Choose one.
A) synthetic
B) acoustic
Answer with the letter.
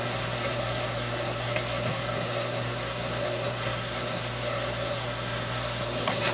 A